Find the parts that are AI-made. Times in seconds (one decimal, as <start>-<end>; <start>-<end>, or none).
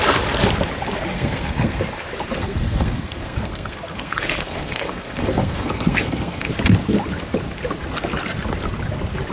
1.1-1.8; 2.4-6.5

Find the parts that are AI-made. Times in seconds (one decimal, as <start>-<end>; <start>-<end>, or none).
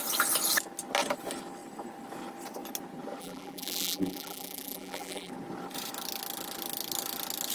3.2-5.3